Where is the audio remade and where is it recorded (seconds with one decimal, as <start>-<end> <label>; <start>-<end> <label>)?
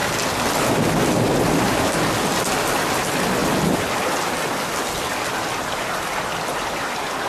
0.0-7.3 recorded